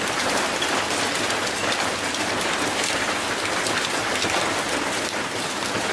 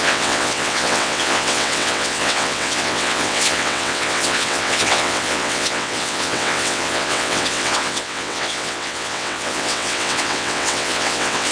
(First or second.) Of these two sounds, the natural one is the first